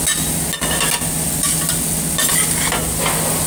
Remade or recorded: recorded